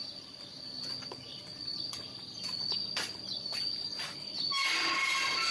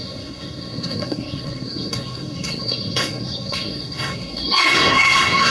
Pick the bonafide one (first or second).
first